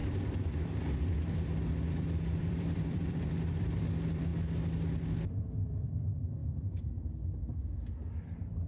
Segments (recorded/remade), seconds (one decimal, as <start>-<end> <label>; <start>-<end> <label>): 0.0-1.3 recorded; 1.3-4.3 remade; 4.3-5.7 recorded; 5.7-8.7 remade

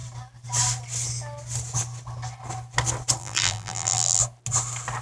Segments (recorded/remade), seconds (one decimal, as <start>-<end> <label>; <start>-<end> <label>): 0.0-3.2 recorded; 3.2-4.2 remade; 4.2-5.0 recorded

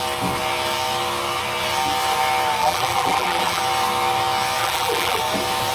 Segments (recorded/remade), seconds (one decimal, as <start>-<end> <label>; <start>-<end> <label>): 0.0-2.6 recorded; 2.6-3.6 remade; 3.6-4.6 recorded; 4.6-5.2 remade; 5.2-5.7 recorded

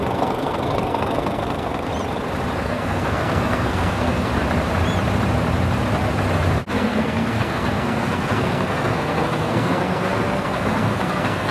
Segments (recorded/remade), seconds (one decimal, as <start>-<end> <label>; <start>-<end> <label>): 0.0-1.9 remade; 1.9-2.6 recorded; 2.6-4.3 remade; 4.3-6.7 recorded; 6.7-11.5 remade